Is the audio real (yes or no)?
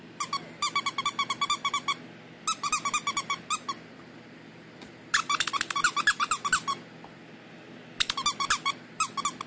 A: yes